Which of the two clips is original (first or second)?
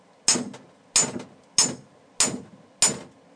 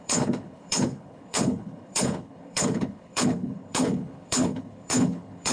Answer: first